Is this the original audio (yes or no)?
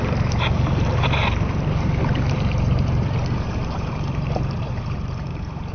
no